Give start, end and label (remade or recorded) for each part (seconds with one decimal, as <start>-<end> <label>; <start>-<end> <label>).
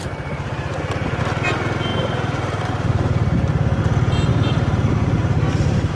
0.0-1.2 remade; 1.2-1.9 recorded; 1.9-3.8 remade; 3.8-4.3 recorded; 4.3-5.9 remade